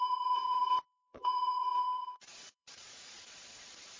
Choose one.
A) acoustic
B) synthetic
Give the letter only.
B